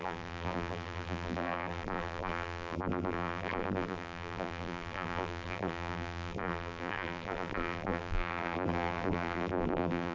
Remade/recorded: remade